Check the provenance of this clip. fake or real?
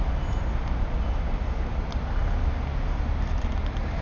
real